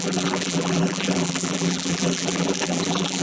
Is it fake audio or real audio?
fake